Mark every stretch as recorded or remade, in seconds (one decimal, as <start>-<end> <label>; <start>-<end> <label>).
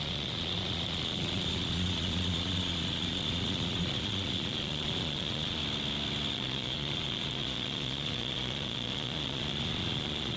0.0-5.6 remade; 5.6-6.3 recorded; 6.3-10.4 remade